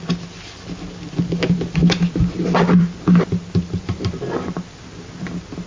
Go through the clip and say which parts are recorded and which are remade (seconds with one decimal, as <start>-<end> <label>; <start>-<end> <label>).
0.0-5.7 recorded

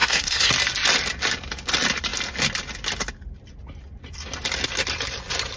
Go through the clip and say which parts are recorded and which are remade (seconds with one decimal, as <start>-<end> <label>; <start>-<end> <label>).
0.0-0.5 remade; 0.5-5.6 recorded

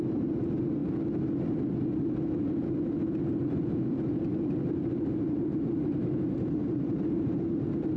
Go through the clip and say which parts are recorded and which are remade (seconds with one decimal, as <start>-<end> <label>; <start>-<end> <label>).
0.0-0.8 remade; 0.8-3.3 recorded; 3.3-8.0 remade

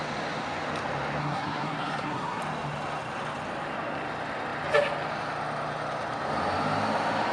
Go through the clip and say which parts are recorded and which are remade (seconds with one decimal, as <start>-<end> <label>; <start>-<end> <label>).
0.0-1.2 recorded; 1.2-2.4 remade; 2.4-7.3 recorded

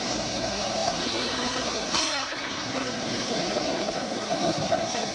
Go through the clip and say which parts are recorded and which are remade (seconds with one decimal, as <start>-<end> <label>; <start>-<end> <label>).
0.0-5.1 remade

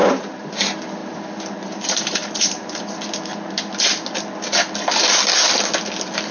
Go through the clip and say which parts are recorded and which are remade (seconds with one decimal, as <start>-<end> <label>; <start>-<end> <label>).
0.0-0.6 remade; 0.6-1.0 recorded; 1.0-2.8 remade; 2.8-6.3 recorded